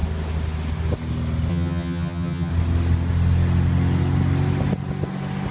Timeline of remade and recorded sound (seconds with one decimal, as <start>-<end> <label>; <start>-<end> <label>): 0.0-1.5 recorded; 1.5-2.5 remade; 2.5-5.5 recorded